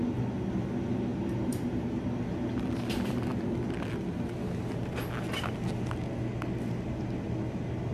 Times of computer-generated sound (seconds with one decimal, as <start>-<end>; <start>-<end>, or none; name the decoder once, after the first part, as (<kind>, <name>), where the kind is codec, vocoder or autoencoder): 1.1-2.0 (vocoder, BigVGAN v2)